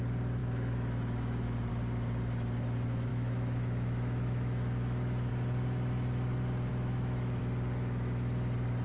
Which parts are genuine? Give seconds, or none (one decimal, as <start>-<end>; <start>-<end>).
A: 0.0-0.4; 1.7-3.1; 5.3-6.7; 7.4-8.8